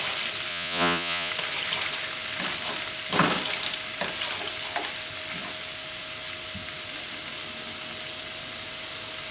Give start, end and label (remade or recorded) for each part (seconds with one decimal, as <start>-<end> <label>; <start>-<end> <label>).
0.0-0.5 recorded; 0.5-1.3 remade; 1.3-9.3 recorded